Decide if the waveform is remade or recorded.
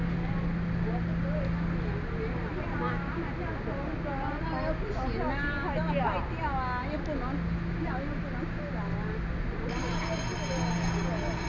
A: recorded